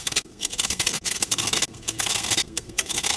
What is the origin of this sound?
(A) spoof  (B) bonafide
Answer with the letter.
A